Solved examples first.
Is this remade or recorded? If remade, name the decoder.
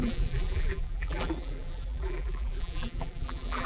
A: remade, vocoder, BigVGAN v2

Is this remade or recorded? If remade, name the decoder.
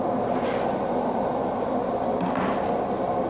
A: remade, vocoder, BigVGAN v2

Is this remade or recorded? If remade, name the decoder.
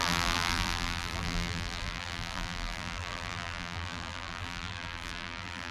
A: remade, vocoder, BigVGAN v2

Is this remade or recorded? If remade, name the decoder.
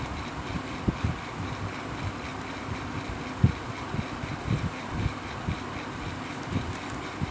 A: remade, vocoder, BigVGAN v2